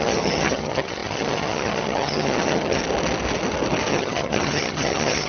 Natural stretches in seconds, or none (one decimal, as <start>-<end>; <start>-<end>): 2.8-3.9